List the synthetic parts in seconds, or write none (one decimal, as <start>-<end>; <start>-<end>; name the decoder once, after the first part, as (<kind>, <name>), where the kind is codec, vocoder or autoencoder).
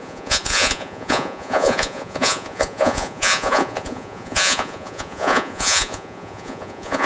0.0-7.1 (vocoder, Vocos)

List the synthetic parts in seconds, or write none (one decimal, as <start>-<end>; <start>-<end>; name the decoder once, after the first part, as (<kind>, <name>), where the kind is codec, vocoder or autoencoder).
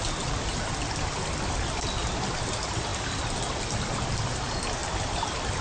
none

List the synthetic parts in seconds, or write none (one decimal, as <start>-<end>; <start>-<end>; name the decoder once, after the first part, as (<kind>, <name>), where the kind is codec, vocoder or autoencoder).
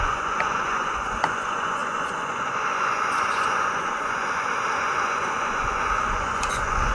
0.0-6.9 (vocoder, Vocos)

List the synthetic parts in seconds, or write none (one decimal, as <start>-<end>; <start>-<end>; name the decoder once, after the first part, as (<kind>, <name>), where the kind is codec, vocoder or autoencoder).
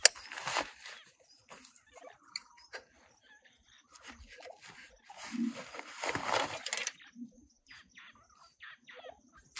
none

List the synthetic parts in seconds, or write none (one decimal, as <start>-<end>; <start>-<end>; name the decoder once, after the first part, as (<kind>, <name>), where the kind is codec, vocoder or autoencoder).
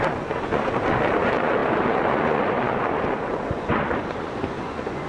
0.0-5.1 (vocoder, Vocos)